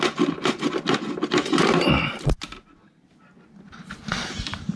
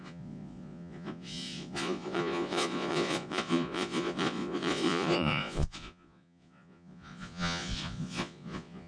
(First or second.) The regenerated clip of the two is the second